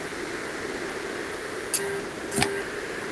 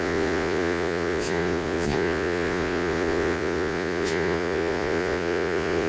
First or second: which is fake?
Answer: second